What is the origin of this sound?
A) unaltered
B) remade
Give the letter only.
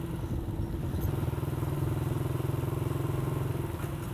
A